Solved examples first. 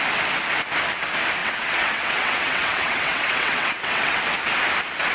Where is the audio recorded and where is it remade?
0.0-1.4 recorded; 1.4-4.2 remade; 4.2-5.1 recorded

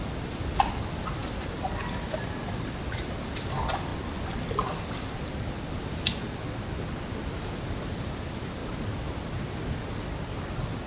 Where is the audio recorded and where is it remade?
0.0-10.9 recorded

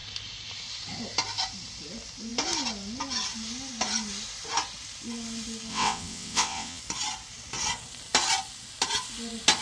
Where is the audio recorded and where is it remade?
0.0-5.7 recorded; 5.7-6.8 remade; 6.8-9.6 recorded

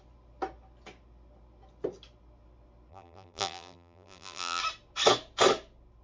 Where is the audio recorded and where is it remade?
0.0-2.9 recorded; 2.9-4.6 remade; 4.6-6.0 recorded

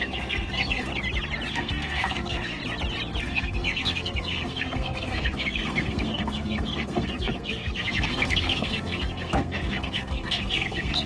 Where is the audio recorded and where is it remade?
0.0-0.9 remade; 0.9-1.5 recorded; 1.5-2.6 remade; 2.6-3.2 recorded; 3.2-11.1 remade

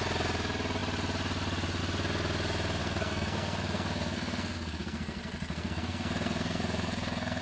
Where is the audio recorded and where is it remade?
0.0-2.8 recorded; 2.8-7.4 remade

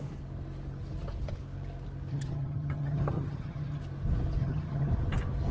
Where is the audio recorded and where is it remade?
0.0-2.1 recorded; 2.1-3.8 remade; 3.8-4.4 recorded; 4.4-4.9 remade; 4.9-5.5 recorded

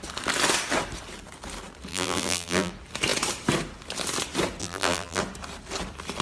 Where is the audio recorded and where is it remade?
0.0-1.9 recorded; 1.9-2.7 remade; 2.7-4.6 recorded; 4.6-5.2 remade; 5.2-6.2 recorded